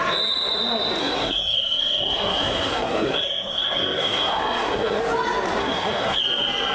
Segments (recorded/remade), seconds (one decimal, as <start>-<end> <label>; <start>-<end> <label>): 0.0-1.0 recorded; 1.0-5.0 remade; 5.0-5.6 recorded; 5.6-6.2 remade; 6.2-6.7 recorded